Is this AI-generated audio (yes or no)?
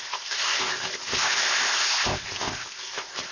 yes